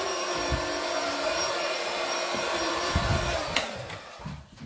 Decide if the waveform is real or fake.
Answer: fake